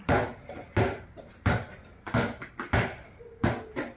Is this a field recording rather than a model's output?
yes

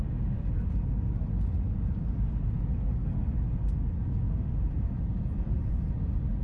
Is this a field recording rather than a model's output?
yes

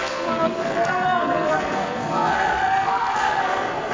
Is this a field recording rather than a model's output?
no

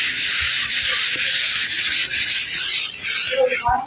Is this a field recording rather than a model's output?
yes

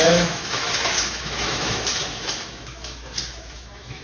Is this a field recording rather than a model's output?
no